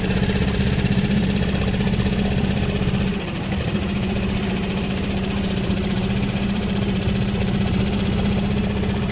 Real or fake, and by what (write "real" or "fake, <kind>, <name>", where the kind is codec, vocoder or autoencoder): fake, vocoder, BigVGAN v2